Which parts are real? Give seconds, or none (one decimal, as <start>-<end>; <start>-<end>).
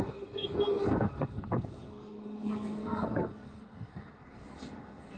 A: none